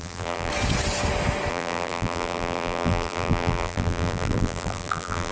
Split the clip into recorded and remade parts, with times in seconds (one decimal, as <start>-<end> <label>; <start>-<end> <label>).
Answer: 0.0-0.5 remade; 0.5-1.5 recorded; 1.5-5.3 remade